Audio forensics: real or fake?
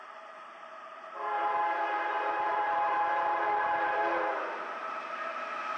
fake